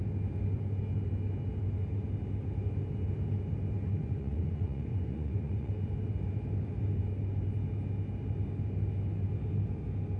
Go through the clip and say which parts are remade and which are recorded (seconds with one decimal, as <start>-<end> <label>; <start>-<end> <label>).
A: 0.0-4.0 recorded; 4.0-5.7 remade; 5.7-10.2 recorded